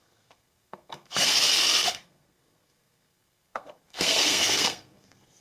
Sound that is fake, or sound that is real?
fake